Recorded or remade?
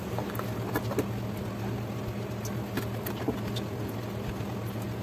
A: recorded